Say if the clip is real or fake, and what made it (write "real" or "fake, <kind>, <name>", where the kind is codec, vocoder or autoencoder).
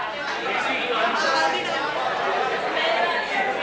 real